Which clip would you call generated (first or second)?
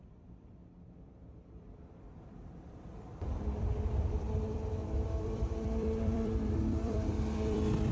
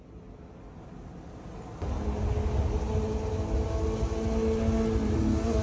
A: first